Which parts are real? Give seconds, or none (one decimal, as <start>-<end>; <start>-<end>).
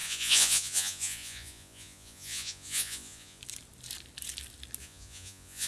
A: 3.4-4.8